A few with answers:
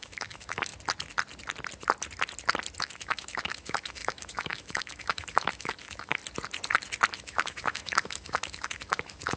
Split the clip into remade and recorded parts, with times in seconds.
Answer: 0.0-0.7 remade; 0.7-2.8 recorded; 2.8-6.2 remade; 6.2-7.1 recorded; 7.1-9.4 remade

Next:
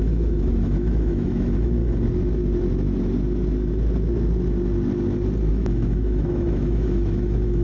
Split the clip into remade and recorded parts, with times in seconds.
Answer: 0.0-1.8 remade; 1.8-5.5 recorded; 5.5-7.6 remade